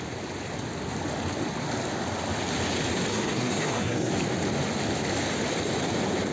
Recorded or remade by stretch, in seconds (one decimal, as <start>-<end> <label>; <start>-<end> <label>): 0.0-3.1 recorded; 3.1-4.1 remade; 4.1-6.3 recorded